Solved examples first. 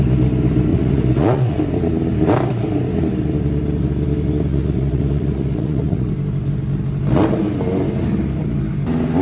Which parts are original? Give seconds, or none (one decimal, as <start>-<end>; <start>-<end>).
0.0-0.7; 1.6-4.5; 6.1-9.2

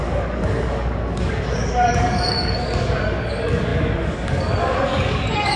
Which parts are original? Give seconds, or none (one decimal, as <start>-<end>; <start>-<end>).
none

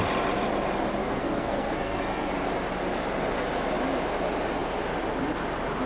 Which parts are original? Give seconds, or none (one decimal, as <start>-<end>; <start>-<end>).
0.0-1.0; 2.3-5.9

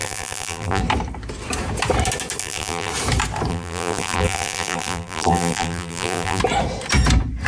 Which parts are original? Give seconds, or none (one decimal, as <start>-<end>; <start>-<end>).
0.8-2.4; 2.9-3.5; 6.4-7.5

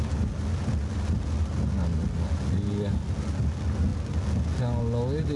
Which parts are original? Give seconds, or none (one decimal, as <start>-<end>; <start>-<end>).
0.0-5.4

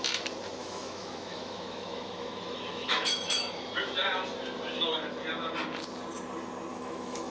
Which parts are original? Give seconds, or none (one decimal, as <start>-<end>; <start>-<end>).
0.0-0.6; 3.7-6.7

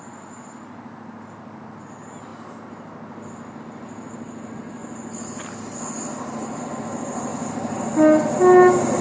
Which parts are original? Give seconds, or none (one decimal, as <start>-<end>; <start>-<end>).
0.0-9.0